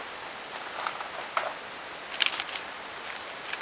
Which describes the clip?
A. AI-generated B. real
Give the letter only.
B